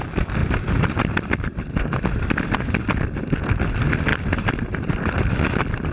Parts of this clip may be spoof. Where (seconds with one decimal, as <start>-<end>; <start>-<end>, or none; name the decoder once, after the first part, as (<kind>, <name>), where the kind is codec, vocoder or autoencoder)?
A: 0.4-1.1 (vocoder, BigVGAN v2); 4.1-5.3